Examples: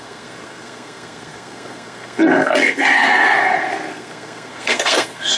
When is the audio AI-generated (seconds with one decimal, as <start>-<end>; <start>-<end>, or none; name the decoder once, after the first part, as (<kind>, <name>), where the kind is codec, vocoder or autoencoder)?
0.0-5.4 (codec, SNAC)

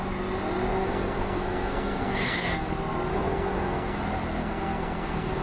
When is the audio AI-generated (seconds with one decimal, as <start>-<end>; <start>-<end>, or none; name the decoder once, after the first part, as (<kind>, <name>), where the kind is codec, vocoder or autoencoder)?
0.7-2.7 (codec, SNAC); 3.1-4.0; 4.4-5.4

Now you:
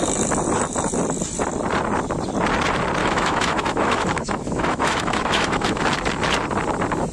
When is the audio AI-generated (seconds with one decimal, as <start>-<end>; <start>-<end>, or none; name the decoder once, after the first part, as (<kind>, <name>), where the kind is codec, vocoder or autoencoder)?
3.0-5.8 (autoencoder, DAC-VAE)